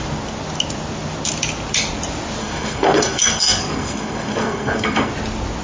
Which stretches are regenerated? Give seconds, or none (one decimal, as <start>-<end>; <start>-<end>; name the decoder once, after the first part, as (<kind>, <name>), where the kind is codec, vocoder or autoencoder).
2.4-5.1 (codec, SNAC)